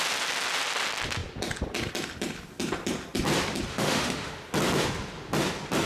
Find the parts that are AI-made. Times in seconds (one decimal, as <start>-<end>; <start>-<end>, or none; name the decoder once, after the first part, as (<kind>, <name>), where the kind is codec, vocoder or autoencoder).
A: 3.7-4.4 (autoencoder, DAC-VAE)